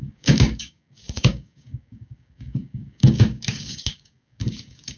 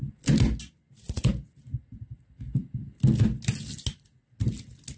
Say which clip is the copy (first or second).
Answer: first